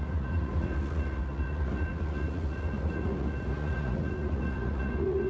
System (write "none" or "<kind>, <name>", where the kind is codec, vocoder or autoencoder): vocoder, Vocos